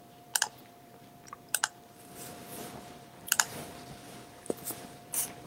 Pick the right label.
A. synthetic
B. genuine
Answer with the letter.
A